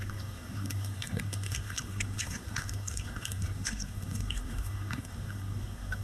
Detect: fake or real fake